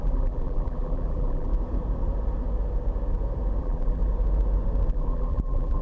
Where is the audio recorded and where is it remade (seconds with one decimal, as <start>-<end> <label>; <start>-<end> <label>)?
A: 0.0-1.5 remade; 1.5-3.6 recorded; 3.6-4.0 remade; 4.0-4.9 recorded; 4.9-5.8 remade